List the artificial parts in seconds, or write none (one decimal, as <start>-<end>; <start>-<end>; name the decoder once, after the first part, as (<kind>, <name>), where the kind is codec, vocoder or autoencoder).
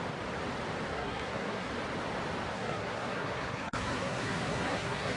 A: 0.9-1.7 (codec, SNAC); 2.5-5.2